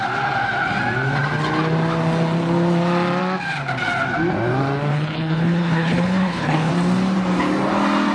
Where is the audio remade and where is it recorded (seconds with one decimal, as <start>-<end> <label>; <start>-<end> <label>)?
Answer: 0.0-4.9 recorded; 4.9-6.7 remade; 6.7-8.1 recorded